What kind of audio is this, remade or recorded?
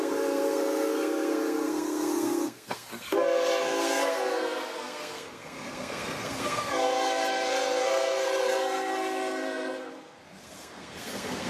remade